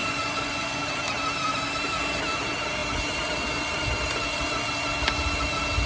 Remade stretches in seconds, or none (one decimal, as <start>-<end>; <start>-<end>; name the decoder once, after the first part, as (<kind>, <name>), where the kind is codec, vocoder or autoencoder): 0.0-0.8 (vocoder, Vocos)